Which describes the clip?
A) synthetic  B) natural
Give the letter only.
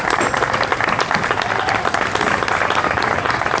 A